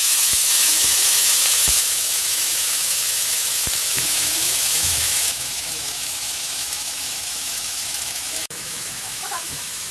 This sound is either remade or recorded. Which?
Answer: remade